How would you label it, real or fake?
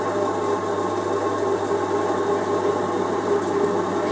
real